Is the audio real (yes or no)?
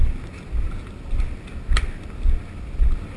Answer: yes